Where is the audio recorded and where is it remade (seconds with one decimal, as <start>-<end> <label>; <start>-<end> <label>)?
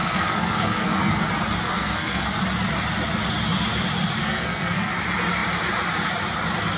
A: 0.0-1.2 remade; 1.2-1.7 recorded; 1.7-2.4 remade; 2.4-4.2 recorded; 4.2-4.9 remade; 4.9-6.8 recorded